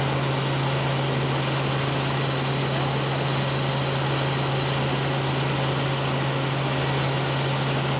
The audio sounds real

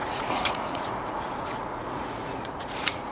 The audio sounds fake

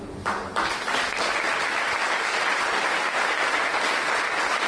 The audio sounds real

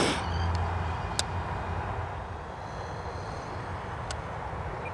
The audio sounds real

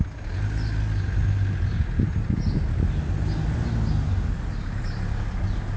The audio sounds real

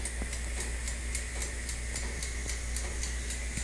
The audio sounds real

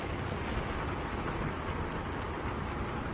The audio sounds real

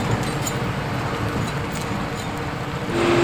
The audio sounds real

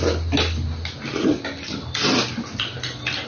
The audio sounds real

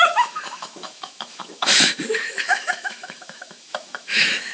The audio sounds fake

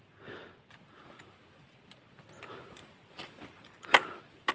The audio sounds fake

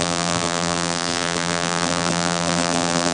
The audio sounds fake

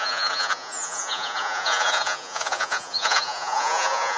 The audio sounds fake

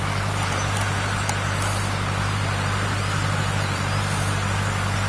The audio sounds real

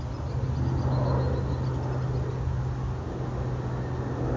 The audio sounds real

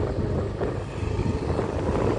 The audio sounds real